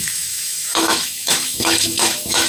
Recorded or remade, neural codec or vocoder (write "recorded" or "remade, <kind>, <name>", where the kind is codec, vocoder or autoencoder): remade, autoencoder, DAC-VAE